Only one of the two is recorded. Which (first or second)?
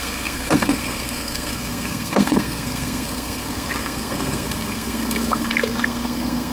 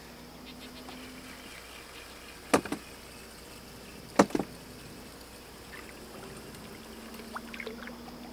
second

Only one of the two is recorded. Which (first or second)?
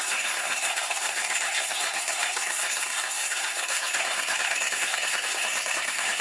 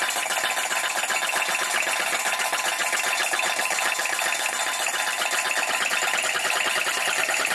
second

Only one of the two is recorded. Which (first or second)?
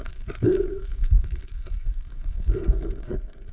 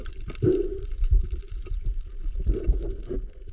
second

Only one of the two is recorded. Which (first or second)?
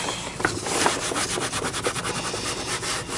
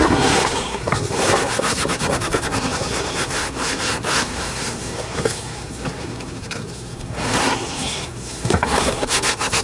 first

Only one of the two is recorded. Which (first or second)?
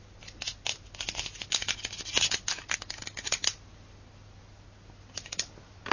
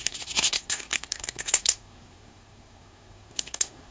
first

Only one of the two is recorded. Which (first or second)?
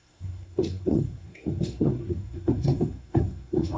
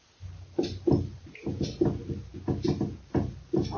second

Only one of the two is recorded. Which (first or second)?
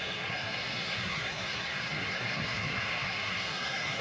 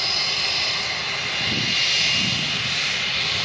second